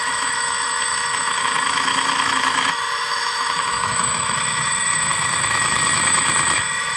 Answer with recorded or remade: remade